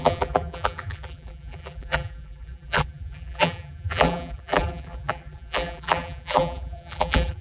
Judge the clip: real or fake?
fake